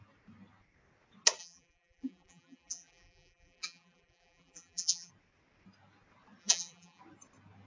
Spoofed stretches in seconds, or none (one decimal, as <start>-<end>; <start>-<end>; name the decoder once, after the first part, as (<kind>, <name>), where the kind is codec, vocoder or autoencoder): 1.4-5.1 (vocoder, BigVGAN v2); 6.4-7.0